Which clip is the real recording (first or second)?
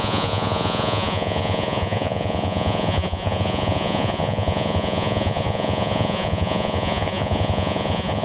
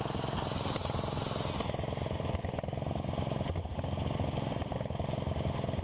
second